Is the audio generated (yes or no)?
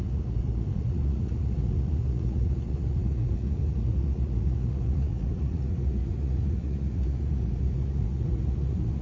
yes